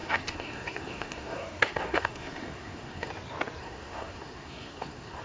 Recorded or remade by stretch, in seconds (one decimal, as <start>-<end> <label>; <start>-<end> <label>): 0.0-3.1 remade; 3.1-3.6 recorded; 3.6-5.2 remade